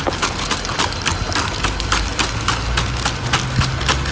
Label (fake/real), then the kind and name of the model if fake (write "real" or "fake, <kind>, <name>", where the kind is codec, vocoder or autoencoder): real